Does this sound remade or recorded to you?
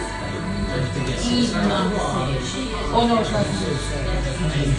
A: recorded